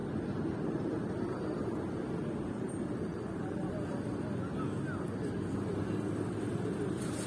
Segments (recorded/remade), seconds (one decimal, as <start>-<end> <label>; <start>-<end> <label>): 0.0-3.7 remade; 3.7-7.3 recorded